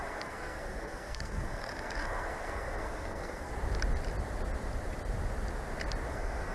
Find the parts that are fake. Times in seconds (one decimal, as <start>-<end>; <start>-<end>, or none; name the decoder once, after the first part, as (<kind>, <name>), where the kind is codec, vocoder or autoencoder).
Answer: 0.0-3.5 (codec, SNAC); 6.1-6.5